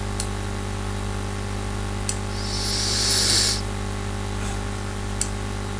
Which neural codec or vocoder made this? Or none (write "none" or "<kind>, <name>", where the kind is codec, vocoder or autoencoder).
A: none